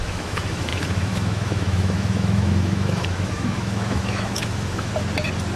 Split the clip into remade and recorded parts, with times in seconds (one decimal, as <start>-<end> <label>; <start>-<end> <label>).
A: 0.0-4.9 remade; 4.9-5.6 recorded